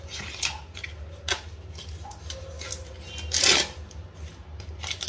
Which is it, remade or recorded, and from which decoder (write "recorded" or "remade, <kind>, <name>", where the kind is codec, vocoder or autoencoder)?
recorded